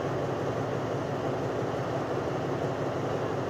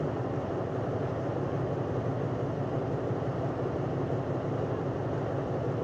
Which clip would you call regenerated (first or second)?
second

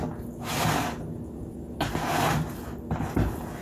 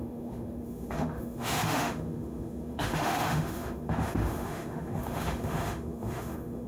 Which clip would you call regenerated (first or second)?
second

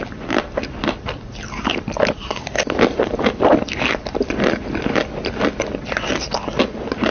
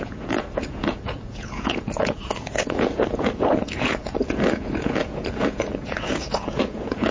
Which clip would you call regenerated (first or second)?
second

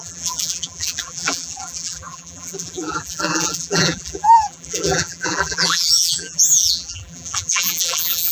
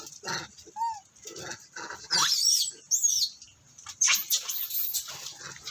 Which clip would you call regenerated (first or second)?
first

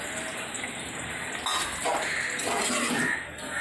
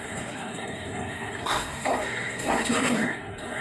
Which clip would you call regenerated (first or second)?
second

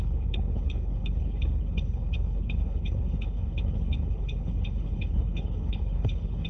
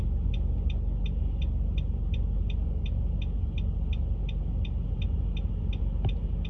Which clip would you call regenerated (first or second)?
first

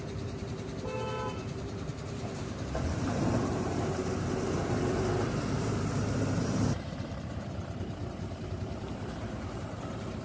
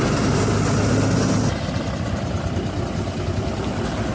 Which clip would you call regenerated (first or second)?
first